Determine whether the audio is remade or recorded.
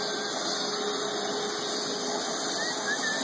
recorded